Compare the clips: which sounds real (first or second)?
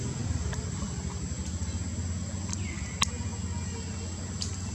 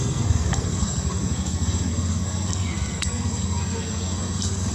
first